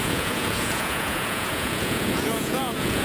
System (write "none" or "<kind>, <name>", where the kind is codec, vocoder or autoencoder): vocoder, Vocos